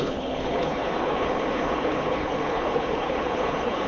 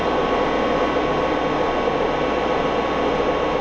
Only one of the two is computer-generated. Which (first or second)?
first